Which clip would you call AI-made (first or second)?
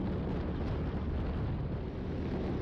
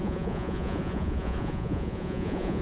second